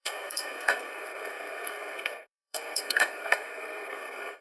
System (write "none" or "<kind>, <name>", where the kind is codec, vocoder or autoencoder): codec, SNAC